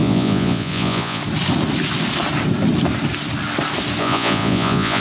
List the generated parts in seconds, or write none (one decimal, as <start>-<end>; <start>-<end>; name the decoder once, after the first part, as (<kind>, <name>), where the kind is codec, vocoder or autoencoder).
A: 0.0-1.2 (vocoder, Vocos); 4.0-5.0